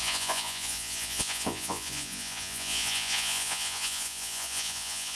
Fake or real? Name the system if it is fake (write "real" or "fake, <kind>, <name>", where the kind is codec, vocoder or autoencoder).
fake, vocoder, Vocos